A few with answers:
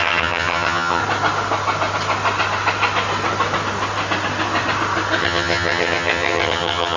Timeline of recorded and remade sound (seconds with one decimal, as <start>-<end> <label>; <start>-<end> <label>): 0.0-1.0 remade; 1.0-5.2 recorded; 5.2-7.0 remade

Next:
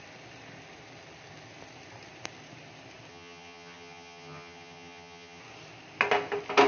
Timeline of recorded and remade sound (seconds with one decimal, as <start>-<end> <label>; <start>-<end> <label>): 0.0-3.1 recorded; 3.1-5.4 remade; 5.4-6.7 recorded

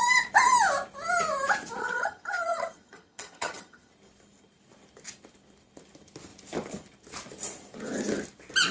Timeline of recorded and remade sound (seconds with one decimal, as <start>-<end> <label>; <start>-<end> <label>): 0.0-1.8 recorded; 1.8-3.9 remade; 3.9-8.7 recorded

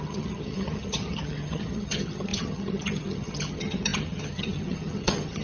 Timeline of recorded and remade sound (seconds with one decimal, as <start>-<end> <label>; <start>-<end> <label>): 0.0-5.4 remade

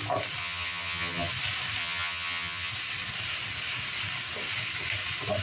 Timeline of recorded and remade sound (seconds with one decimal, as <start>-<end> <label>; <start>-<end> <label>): 0.0-0.4 recorded; 0.4-1.3 remade; 1.3-1.8 recorded; 1.8-2.7 remade; 2.7-5.4 recorded

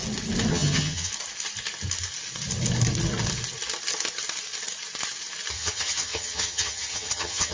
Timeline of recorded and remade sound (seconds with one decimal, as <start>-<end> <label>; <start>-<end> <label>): 0.0-0.5 recorded; 0.5-1.1 remade; 1.1-5.5 recorded; 5.5-7.5 remade